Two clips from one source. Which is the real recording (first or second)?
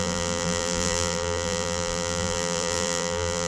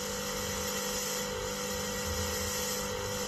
second